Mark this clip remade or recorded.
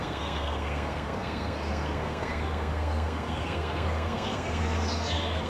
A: remade